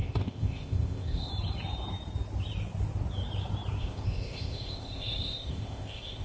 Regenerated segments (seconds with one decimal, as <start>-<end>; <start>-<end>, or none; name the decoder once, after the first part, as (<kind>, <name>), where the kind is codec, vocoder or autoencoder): 0.0-1.3 (codec, ZipCodec); 3.8-6.2

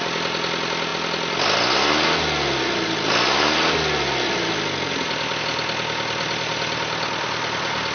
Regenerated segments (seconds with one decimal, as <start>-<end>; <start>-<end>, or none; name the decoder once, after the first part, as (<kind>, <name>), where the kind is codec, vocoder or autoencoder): none

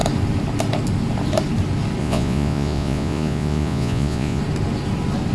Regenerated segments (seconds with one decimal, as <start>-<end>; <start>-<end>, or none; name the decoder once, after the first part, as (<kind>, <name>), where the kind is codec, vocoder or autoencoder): 2.0-4.4 (vocoder, Vocos)

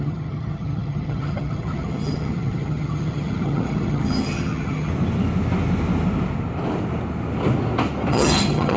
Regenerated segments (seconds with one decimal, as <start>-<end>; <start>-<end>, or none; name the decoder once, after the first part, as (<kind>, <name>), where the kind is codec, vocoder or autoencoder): 0.0-4.9 (vocoder, HiFi-GAN); 8.1-8.8

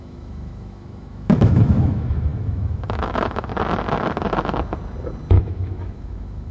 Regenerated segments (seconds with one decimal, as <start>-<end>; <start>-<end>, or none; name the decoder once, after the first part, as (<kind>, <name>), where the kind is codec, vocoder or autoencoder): 0.0-3.5 (autoencoder, DAC-VAE); 5.3-6.5

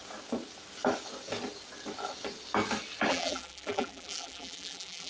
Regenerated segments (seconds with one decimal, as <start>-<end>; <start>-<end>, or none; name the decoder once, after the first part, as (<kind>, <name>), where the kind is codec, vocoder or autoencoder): 3.1-5.1 (vocoder, BigVGAN v2)

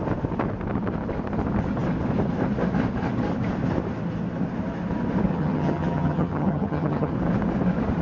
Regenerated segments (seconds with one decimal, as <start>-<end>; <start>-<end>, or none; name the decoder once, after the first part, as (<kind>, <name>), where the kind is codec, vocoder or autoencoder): 5.3-7.1 (vocoder, HiFi-GAN)

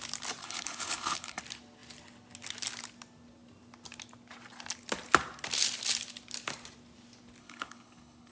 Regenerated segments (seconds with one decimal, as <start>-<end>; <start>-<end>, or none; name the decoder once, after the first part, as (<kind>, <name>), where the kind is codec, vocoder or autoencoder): 0.4-1.4 (codec, HILCodec); 7.4-8.3